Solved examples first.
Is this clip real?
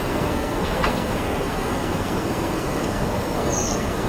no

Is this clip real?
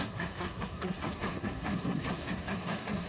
no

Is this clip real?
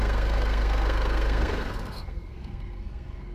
no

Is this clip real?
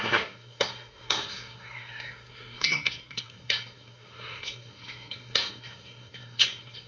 no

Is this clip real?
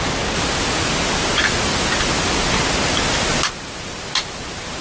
yes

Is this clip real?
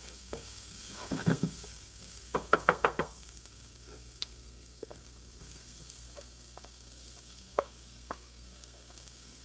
no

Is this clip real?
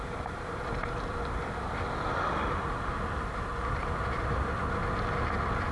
yes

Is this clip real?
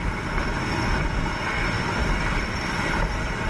yes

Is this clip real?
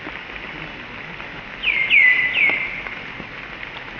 yes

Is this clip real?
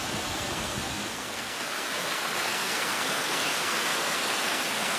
no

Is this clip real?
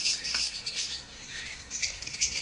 no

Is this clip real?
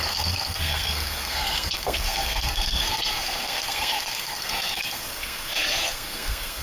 no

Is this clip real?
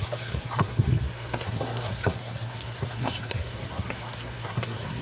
no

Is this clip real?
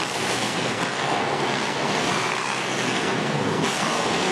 no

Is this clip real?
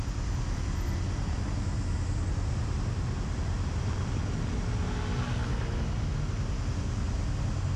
yes